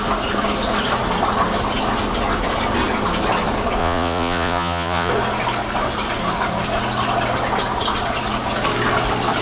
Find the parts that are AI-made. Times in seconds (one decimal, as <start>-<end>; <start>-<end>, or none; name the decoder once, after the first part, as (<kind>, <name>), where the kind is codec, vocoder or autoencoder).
3.8-5.1 (vocoder, Vocos)